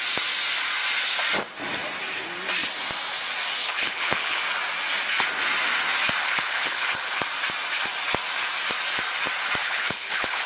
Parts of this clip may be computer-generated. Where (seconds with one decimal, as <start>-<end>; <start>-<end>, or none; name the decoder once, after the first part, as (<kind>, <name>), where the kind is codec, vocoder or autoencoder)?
3.6-4.4 (codec, HILCodec); 6.2-7.2; 9.6-10.5